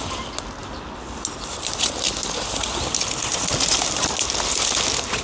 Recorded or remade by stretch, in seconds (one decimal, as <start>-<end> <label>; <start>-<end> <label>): 0.0-5.2 recorded